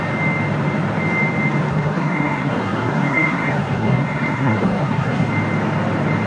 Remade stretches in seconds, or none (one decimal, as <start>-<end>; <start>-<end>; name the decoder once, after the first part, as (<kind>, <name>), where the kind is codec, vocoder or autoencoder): 1.7-5.3 (codec, SNAC)